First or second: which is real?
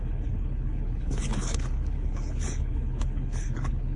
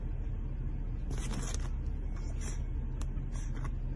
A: second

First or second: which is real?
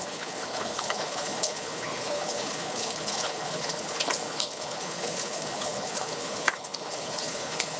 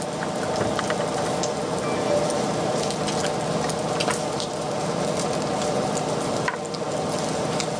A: second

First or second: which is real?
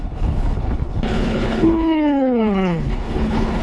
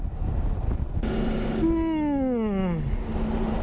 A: second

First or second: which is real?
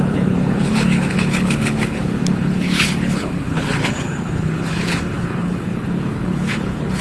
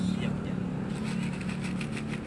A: second